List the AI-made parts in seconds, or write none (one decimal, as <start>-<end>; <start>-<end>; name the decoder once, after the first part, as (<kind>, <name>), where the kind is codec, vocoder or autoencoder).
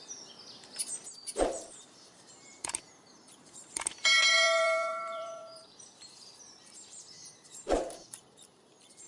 0.0-0.9 (vocoder, BigVGAN v2); 1.5-9.1